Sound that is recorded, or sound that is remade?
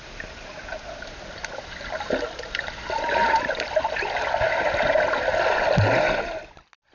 recorded